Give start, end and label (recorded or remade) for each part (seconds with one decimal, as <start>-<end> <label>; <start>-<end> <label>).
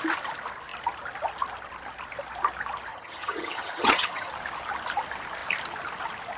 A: 0.0-2.9 recorded; 2.9-4.3 remade; 4.3-6.4 recorded